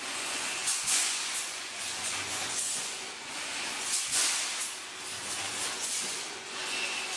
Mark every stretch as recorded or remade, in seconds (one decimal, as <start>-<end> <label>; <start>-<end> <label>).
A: 0.0-4.2 remade; 4.2-5.2 recorded; 5.2-7.2 remade